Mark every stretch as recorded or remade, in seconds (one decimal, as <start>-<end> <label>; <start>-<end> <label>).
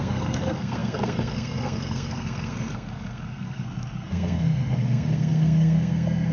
0.0-6.3 remade